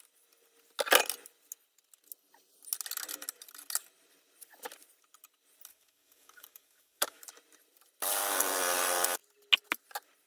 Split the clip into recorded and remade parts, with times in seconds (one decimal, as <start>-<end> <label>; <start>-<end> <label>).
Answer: 0.0-5.7 recorded; 5.7-7.2 remade; 7.2-10.3 recorded